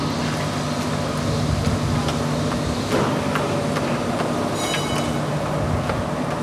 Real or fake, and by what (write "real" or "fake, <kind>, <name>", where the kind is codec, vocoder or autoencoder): real